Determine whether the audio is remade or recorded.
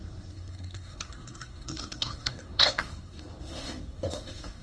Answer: remade